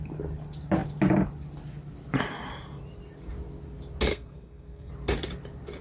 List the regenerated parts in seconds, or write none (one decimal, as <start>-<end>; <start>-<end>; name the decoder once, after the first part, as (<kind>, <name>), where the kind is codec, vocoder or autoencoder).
4.1-4.9 (codec, SNAC)